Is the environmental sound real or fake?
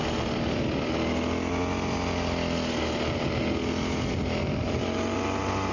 real